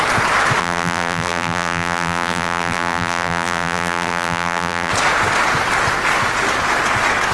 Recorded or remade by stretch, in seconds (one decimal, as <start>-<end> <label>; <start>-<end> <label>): 0.0-0.6 recorded; 0.6-4.9 remade; 4.9-7.3 recorded